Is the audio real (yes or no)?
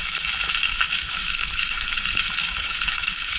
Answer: no